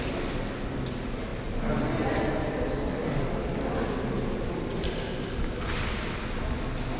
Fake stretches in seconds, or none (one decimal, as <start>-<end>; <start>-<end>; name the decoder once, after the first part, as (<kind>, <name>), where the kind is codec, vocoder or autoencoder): none